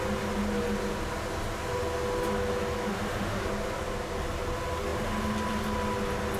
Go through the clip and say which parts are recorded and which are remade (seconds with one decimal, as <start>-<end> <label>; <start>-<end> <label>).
0.0-2.9 recorded; 2.9-3.4 remade; 3.4-6.4 recorded